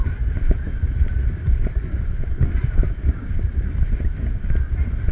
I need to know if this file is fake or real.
real